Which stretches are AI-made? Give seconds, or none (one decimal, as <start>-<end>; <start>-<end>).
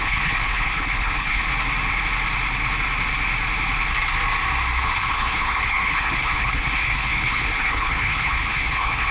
0.0-1.5; 4.8-9.1